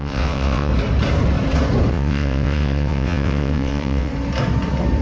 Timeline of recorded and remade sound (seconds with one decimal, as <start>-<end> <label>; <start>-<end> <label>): 0.0-0.7 remade; 0.7-1.9 recorded; 1.9-4.1 remade; 4.1-5.0 recorded